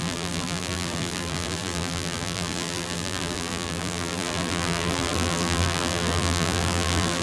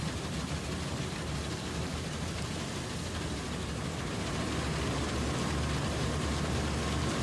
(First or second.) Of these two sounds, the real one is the second